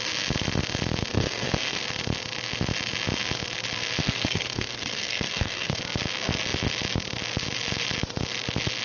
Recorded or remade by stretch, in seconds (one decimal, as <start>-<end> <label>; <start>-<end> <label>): 0.0-1.1 recorded; 1.1-1.8 remade; 1.8-4.0 recorded; 4.0-5.8 remade; 5.8-8.8 recorded